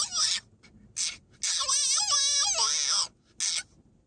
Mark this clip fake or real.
real